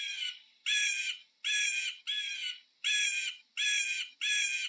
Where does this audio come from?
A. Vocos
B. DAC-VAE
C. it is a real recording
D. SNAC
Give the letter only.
C